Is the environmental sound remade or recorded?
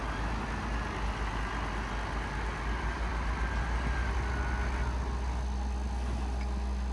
recorded